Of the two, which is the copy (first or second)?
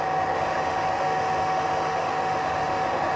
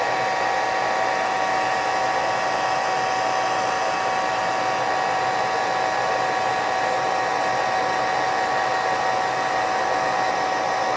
first